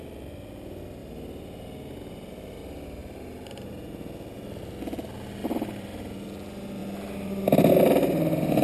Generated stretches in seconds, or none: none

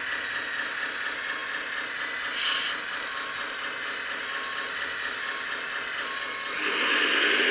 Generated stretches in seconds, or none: none

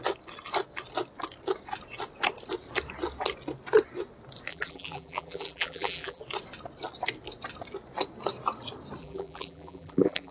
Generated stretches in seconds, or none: 4.5-6.2; 9.0-10.3

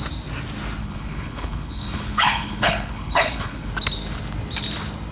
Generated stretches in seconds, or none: 0.8-3.7

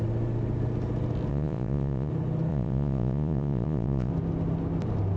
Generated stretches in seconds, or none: 1.3-2.1; 2.5-4.1

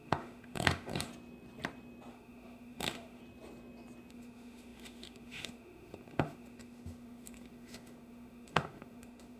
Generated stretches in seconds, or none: 0.0-1.1; 2.1-3.2; 4.1-9.4

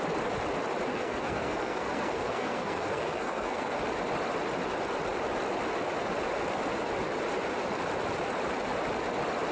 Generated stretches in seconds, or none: 0.9-3.8

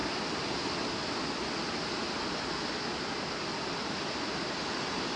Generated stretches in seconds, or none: none